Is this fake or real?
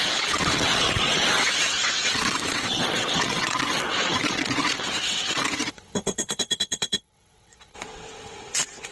fake